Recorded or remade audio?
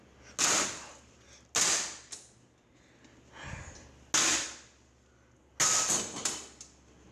recorded